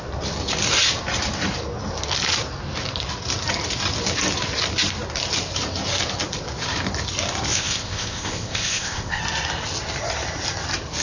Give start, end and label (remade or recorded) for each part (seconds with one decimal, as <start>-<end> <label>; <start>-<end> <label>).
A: 0.0-7.5 recorded; 7.5-9.2 remade; 9.2-11.0 recorded